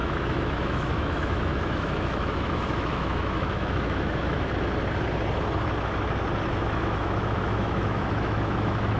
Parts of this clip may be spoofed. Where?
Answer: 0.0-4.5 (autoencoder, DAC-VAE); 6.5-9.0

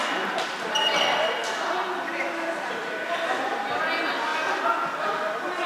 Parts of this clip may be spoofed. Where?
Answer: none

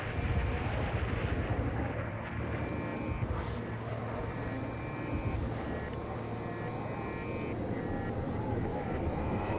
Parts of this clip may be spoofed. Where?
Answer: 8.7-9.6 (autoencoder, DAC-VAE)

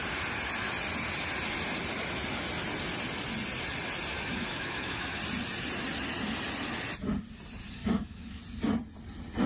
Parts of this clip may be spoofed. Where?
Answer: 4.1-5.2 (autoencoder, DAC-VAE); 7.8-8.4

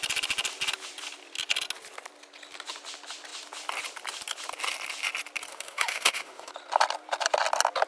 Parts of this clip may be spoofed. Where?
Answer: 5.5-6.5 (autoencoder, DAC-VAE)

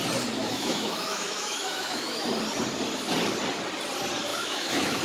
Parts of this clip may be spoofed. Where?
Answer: 0.4-2.3 (autoencoder, DAC-VAE); 4.3-5.0